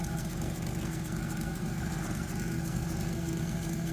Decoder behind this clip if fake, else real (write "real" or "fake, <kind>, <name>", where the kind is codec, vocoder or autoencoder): fake, codec, SNAC